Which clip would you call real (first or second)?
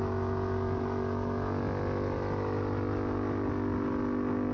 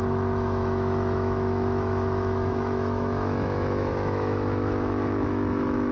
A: first